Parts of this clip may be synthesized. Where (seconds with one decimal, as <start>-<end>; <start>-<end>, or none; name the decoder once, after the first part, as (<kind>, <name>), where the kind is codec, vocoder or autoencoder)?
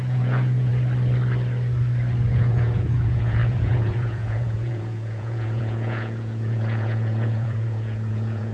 0.0-0.7 (vocoder, Vocos); 2.3-8.5